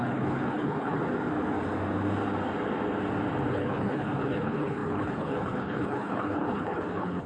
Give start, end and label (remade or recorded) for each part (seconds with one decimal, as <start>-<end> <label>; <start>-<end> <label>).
0.0-1.0 remade; 1.0-3.5 recorded; 3.5-7.3 remade